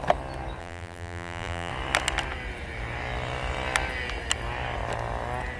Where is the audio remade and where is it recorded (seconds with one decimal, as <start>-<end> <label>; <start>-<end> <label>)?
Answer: 0.0-0.6 recorded; 0.6-1.7 remade; 1.7-5.6 recorded